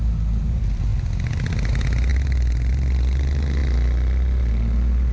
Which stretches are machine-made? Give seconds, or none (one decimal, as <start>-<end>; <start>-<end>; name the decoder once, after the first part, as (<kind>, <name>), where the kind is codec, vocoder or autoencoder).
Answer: none